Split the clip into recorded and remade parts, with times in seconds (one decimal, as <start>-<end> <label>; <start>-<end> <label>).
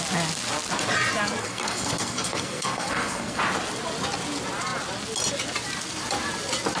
0.0-1.4 recorded; 1.4-3.4 remade; 3.4-6.8 recorded